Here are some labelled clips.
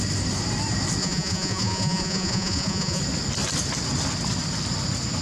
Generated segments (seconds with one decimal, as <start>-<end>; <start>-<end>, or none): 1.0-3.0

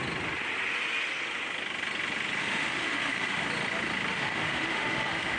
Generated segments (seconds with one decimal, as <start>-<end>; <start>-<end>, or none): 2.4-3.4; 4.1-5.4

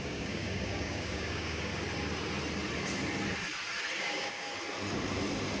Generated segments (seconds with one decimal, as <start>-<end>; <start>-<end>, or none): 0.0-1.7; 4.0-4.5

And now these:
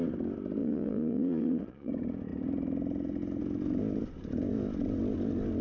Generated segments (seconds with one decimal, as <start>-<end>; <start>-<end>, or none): 0.6-1.9

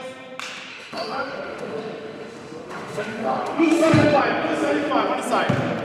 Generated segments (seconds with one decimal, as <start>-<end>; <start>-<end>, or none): 0.7-4.2

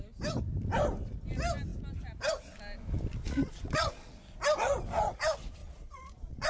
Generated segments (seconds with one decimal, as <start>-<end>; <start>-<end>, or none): 3.2-4.1; 5.6-6.5